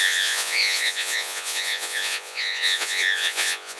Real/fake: fake